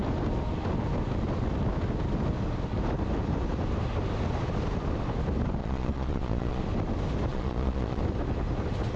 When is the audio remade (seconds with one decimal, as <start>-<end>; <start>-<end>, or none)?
5.6-6.6; 7.3-8.0